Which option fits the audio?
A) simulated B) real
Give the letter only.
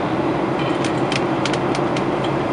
B